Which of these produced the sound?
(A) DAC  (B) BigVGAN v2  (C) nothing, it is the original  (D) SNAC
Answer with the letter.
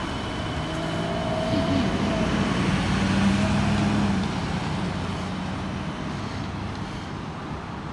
C